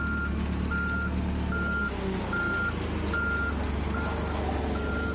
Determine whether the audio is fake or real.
real